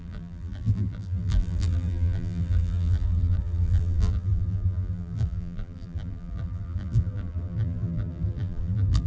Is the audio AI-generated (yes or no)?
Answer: yes